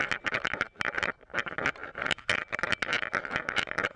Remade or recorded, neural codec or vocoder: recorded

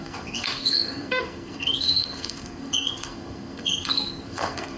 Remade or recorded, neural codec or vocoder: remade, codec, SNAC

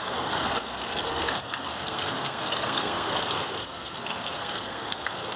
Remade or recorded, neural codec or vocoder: remade, codec, SNAC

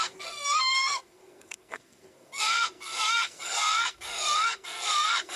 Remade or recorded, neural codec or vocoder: remade, codec, SNAC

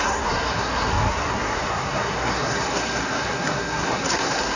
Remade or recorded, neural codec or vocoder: remade, codec, SNAC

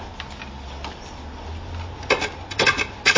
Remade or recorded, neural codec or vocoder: recorded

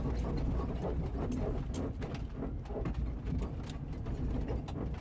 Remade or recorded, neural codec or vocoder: recorded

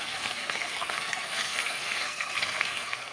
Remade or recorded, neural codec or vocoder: remade, codec, SNAC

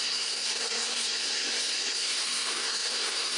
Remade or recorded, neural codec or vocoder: remade, codec, SNAC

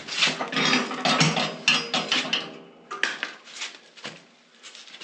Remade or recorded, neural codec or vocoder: recorded